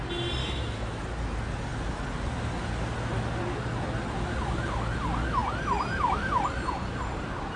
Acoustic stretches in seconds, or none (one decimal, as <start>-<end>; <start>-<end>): 0.0-0.4; 1.0-7.6